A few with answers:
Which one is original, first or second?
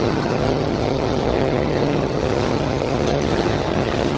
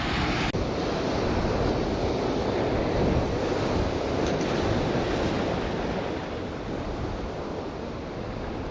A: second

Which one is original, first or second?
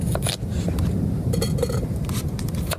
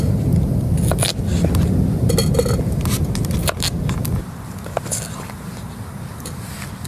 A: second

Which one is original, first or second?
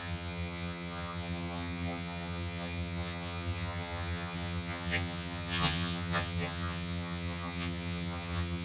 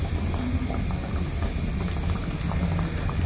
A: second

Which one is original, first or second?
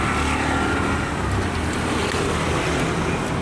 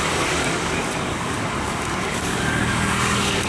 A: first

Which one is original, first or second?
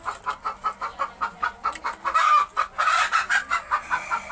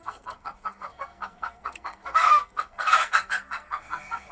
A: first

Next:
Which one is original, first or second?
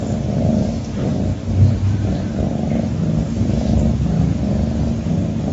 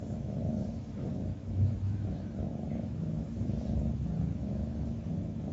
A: first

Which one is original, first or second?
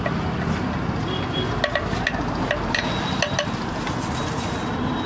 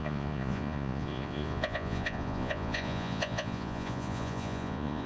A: first